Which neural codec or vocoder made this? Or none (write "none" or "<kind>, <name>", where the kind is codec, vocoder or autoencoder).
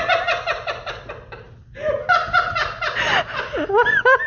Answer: none